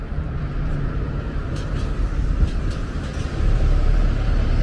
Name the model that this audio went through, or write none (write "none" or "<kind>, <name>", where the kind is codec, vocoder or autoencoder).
vocoder, BigVGAN v2